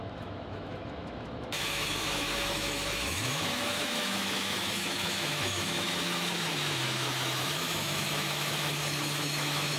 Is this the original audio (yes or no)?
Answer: no